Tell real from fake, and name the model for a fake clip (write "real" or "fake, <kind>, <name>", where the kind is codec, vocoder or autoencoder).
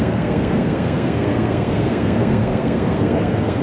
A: fake, codec, SNAC